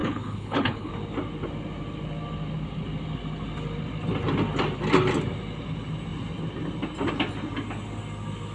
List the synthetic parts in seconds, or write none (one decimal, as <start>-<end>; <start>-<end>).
0.0-0.9